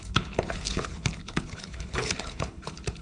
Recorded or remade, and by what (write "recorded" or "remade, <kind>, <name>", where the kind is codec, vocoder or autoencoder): remade, codec, HILCodec